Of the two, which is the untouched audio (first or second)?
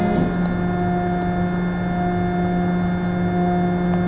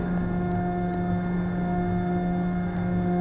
first